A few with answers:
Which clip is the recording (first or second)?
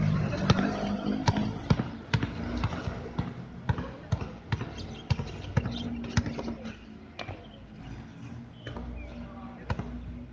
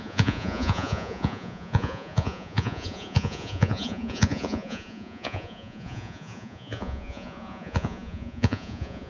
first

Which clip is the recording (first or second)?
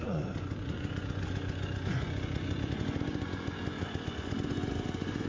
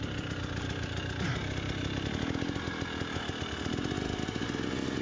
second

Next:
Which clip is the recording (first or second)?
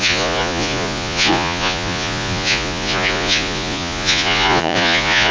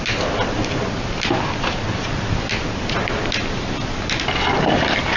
second